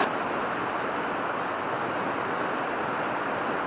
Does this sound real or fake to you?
real